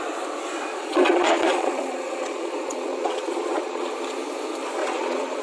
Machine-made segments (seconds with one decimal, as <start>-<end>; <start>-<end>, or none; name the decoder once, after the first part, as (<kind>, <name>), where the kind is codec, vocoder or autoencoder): 0.7-3.9 (vocoder, Vocos); 4.8-5.4